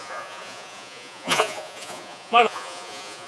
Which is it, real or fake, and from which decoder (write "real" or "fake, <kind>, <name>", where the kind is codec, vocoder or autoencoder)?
fake, vocoder, Vocos